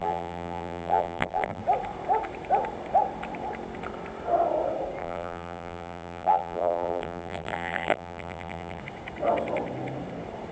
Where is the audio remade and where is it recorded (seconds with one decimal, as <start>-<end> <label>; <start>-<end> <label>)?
0.0-1.6 remade; 1.6-5.0 recorded; 5.0-8.8 remade; 8.8-10.5 recorded